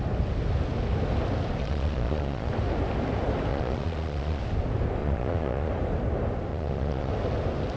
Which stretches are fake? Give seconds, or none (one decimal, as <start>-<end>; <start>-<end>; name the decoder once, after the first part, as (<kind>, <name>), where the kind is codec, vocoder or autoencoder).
1.6-2.5 (vocoder, Vocos); 3.5-4.4; 5.0-5.7; 6.5-7.1